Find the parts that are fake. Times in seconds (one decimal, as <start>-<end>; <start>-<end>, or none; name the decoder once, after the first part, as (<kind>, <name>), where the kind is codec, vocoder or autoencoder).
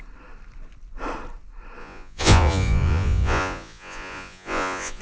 1.8-5.0 (vocoder, Vocos)